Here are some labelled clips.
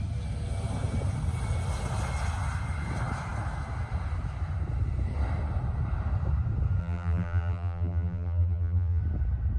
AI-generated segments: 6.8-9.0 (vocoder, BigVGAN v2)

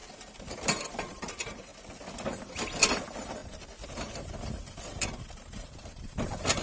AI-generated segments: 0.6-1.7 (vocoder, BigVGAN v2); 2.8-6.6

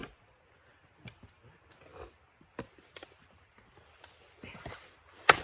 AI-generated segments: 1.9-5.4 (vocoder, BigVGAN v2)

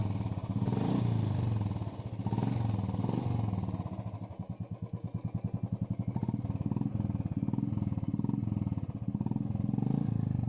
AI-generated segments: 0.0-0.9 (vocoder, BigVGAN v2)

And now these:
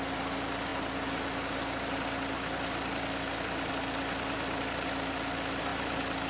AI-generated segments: none

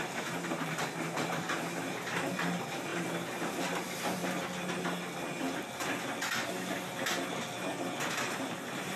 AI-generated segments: 0.0-4.2 (vocoder, BigVGAN v2); 8.1-9.0

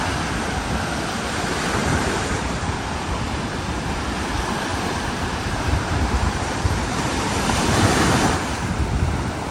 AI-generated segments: 1.8-2.8 (vocoder, BigVGAN v2); 4.7-8.7